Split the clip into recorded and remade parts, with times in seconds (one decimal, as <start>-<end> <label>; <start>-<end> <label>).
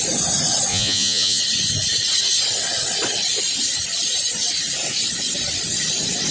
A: 0.0-0.7 recorded; 0.7-1.4 remade; 1.4-6.3 recorded